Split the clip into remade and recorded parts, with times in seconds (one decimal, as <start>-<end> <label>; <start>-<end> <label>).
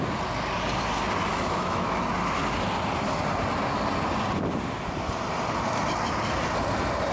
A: 0.0-1.3 recorded; 1.3-2.0 remade; 2.0-7.1 recorded